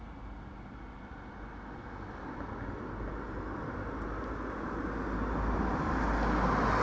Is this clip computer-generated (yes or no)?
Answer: no